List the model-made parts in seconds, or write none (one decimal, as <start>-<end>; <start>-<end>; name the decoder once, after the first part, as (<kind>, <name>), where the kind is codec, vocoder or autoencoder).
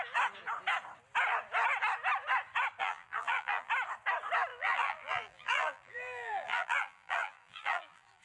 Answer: 2.8-3.7 (vocoder, BigVGAN v2); 4.5-8.2